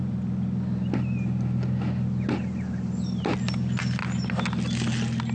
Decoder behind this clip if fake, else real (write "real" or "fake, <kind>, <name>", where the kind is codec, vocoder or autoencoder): real